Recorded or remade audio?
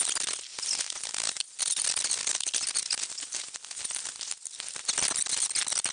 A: recorded